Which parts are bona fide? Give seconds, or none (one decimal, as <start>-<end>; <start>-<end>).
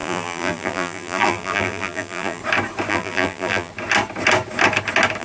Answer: 2.4-2.9; 3.7-5.2